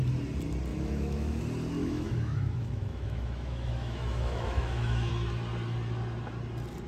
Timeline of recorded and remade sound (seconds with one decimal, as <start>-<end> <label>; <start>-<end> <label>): 0.0-0.7 recorded; 0.7-1.4 remade; 1.4-1.8 recorded; 1.8-5.1 remade; 5.1-6.9 recorded